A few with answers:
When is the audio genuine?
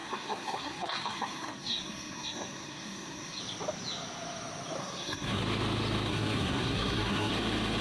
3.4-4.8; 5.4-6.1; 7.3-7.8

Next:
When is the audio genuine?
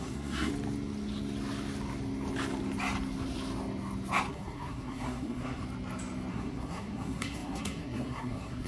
0.5-4.3; 5.6-6.3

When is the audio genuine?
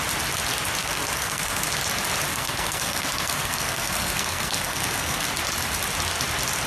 0.0-0.8; 1.7-2.3; 5.3-6.7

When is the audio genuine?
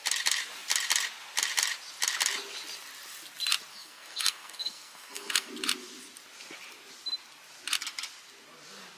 0.0-3.7; 5.5-9.0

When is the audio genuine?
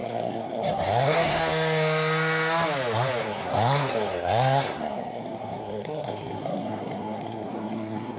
1.4-3.2